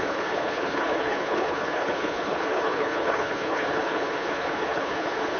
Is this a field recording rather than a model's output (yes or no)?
no